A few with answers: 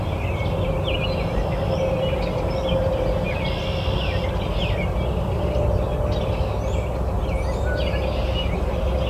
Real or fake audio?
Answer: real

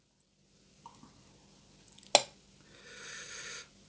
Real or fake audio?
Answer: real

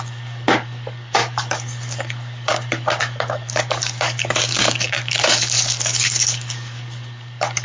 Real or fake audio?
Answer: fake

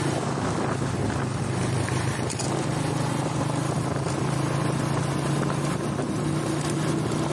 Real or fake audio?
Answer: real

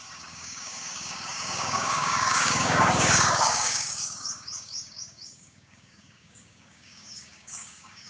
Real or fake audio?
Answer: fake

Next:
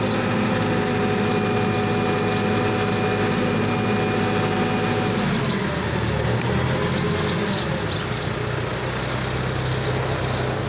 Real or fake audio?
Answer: real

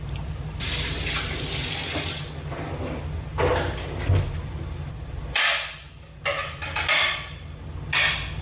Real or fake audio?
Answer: real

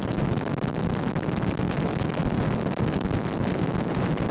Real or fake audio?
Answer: real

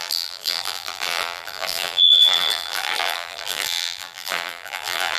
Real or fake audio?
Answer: fake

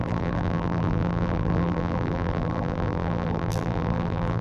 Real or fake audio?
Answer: fake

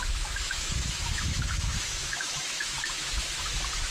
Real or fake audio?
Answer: fake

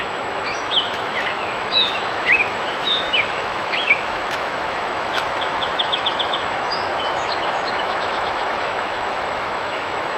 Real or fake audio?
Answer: fake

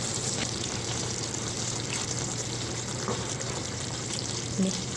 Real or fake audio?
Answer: fake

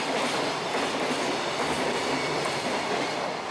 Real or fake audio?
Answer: real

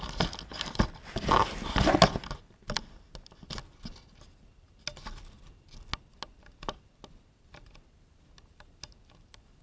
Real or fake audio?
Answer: real